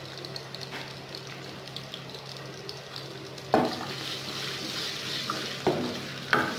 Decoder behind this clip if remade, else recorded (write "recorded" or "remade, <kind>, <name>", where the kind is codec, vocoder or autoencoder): recorded